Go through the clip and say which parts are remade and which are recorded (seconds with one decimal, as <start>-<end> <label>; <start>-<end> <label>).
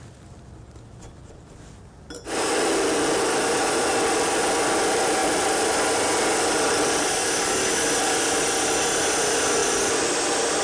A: 0.0-10.6 recorded